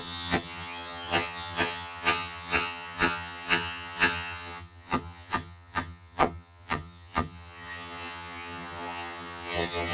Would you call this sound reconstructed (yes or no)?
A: yes